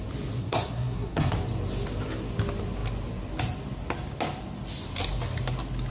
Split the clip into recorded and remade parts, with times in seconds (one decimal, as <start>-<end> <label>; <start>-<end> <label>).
0.0-0.4 recorded; 0.4-1.3 remade; 1.3-5.9 recorded